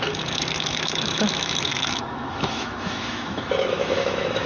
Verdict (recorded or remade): remade